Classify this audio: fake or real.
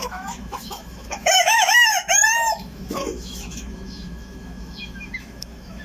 fake